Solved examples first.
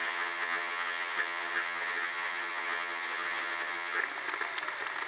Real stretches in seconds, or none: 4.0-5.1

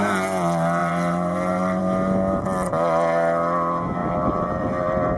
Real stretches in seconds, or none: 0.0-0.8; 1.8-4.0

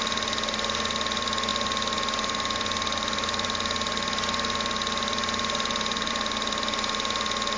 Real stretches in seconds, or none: 0.0-7.6